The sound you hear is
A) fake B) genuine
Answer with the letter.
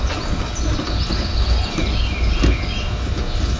B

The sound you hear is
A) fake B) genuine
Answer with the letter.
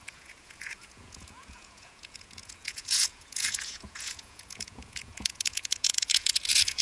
A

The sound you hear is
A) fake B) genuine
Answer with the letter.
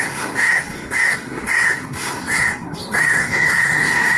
A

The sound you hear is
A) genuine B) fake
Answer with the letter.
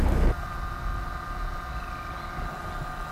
A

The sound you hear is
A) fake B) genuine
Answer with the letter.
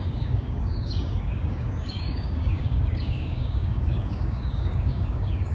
A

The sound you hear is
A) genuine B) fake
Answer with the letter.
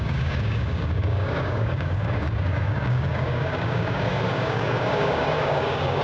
B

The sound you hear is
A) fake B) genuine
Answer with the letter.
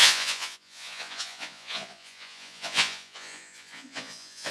A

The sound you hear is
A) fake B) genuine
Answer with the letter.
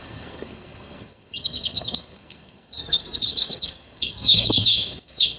A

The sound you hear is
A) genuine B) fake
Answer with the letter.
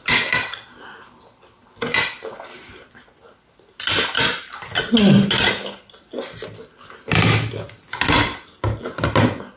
A